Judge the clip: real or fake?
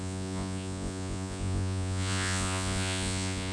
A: fake